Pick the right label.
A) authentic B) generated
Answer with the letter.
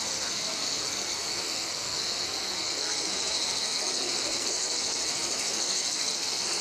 B